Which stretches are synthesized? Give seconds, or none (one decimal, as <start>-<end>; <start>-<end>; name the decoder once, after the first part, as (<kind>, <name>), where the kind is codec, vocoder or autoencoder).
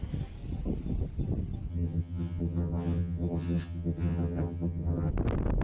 1.7-5.1 (vocoder, HiFi-GAN)